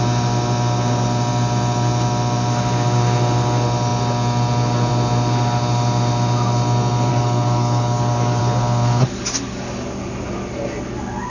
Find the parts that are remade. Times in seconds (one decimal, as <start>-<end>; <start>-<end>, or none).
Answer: 7.1-8.4